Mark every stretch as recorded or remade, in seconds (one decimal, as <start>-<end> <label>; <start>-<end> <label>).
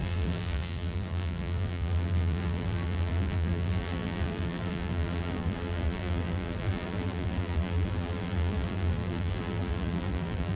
0.0-10.5 remade